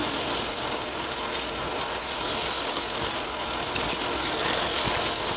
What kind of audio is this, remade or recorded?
recorded